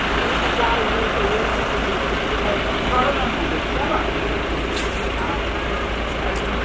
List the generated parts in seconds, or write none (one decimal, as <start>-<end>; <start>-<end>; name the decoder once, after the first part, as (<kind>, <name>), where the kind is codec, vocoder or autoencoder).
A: none